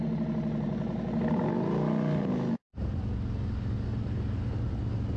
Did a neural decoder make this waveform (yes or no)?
no